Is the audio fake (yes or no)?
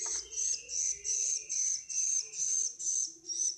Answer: no